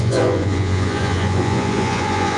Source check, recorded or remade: remade